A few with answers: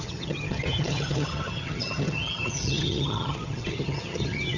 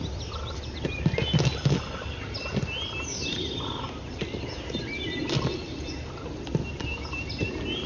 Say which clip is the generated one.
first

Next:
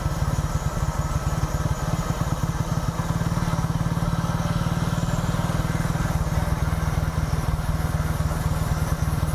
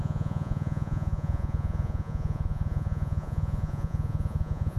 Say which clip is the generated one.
second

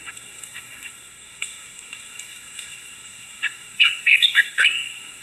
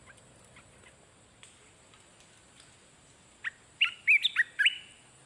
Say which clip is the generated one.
first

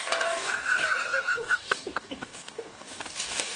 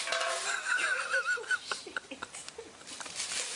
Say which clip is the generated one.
first